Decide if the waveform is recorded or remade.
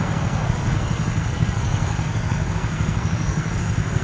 remade